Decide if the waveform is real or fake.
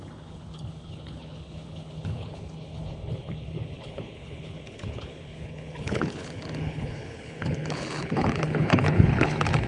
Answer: fake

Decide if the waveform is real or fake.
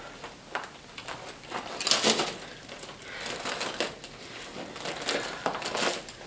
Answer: real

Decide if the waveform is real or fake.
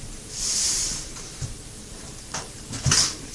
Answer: fake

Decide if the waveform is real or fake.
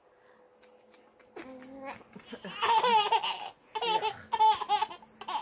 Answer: real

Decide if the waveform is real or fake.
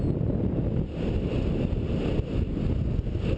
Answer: real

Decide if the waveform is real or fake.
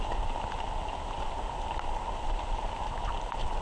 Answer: real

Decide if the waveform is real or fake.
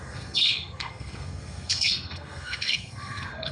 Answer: fake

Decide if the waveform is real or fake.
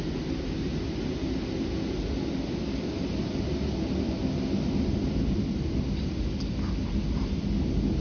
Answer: real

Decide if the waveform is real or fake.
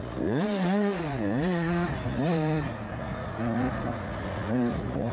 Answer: fake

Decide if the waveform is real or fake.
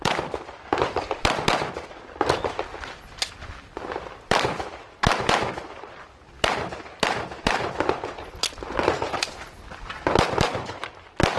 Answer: fake